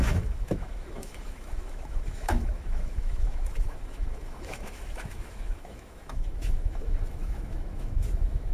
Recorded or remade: remade